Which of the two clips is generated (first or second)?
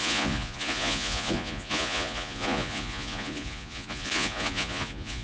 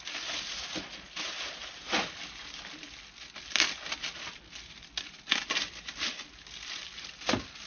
first